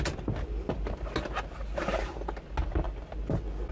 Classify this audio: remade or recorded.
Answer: recorded